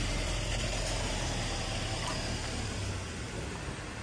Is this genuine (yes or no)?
yes